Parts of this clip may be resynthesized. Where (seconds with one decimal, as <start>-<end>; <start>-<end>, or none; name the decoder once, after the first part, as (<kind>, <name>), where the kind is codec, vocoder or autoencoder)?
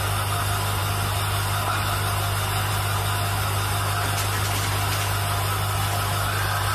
none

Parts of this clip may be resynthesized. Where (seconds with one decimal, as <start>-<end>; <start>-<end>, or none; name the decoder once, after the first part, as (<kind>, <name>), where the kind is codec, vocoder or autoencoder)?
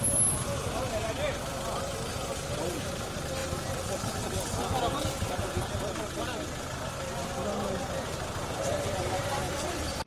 3.4-4.1 (vocoder, BigVGAN v2); 9.4-10.1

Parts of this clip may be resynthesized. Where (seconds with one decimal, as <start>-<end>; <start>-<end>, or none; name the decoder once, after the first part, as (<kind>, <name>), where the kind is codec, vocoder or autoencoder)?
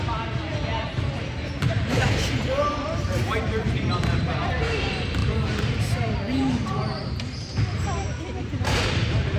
0.7-4.5 (vocoder, BigVGAN v2); 5.2-9.4